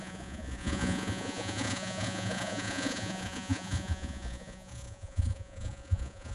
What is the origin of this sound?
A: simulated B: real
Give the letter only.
A